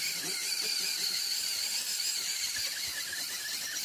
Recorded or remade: recorded